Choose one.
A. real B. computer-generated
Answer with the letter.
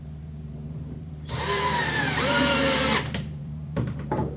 B